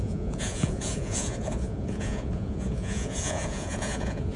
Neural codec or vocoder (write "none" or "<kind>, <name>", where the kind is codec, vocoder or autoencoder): vocoder, Vocos